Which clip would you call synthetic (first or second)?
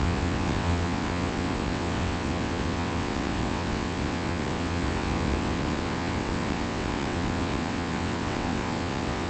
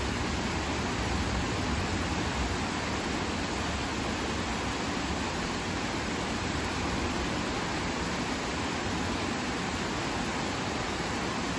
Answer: first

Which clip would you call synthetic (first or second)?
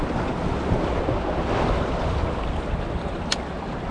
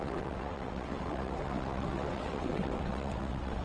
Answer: second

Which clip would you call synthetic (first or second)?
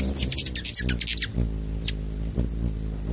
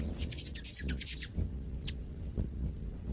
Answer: second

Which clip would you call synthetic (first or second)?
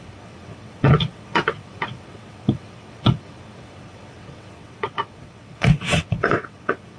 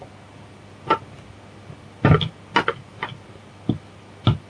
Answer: first